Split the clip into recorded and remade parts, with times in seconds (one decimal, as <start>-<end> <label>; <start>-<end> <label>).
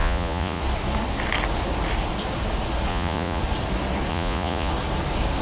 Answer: 0.0-0.6 remade; 0.6-2.9 recorded; 2.9-3.4 remade; 3.4-4.1 recorded; 4.1-4.7 remade; 4.7-5.4 recorded